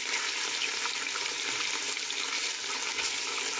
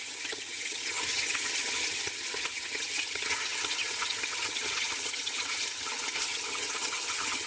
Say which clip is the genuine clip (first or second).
first